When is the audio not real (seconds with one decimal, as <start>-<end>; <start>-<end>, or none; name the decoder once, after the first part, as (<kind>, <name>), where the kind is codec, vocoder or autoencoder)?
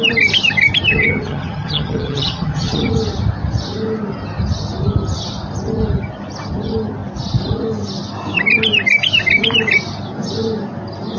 0.9-2.9 (vocoder, HiFi-GAN)